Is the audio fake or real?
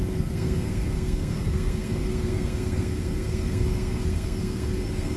fake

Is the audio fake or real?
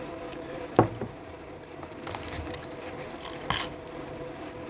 real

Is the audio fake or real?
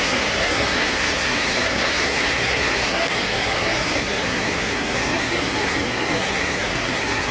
fake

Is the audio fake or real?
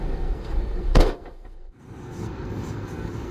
fake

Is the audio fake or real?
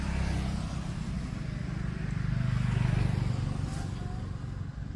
real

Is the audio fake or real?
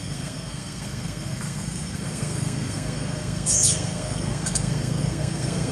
fake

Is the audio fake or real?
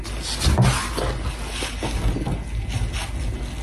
real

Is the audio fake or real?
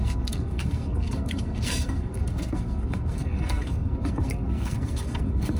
fake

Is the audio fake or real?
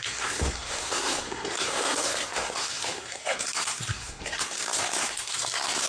fake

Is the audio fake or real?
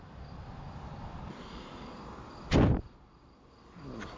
real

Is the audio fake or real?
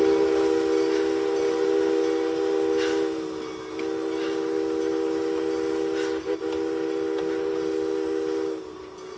real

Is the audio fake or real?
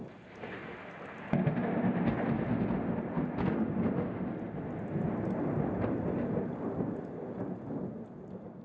real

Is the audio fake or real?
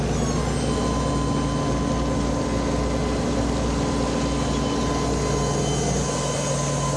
real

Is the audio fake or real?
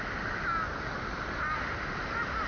real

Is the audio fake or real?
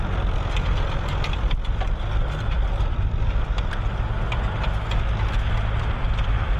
real